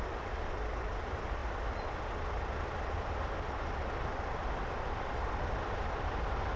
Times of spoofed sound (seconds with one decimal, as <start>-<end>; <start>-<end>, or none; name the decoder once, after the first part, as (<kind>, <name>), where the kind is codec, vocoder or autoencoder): 0.0-1.4 (vocoder, BigVGAN v2); 3.5-6.6